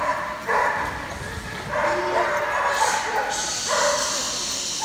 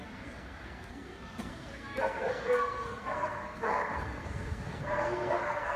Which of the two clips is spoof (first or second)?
second